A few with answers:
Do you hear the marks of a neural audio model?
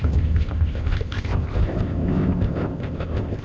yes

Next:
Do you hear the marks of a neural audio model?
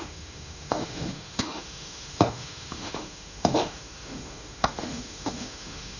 yes